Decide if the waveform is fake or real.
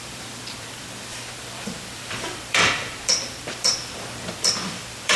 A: fake